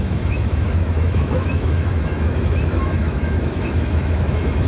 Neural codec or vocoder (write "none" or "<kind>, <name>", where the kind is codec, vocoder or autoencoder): autoencoder, DAC-VAE